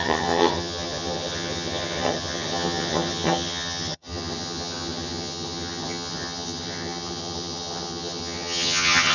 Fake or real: fake